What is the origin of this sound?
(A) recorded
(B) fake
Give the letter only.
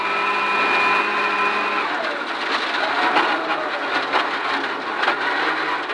A